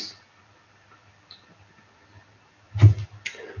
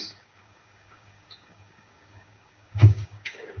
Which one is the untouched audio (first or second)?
first